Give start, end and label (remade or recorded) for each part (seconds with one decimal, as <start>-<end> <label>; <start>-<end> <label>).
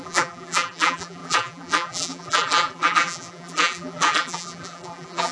0.0-5.3 remade